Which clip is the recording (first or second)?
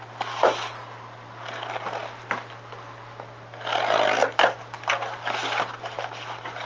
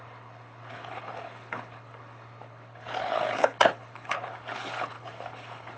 first